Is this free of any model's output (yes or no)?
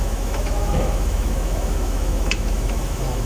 no